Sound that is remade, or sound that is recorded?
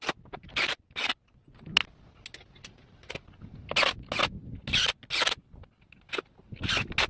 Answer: recorded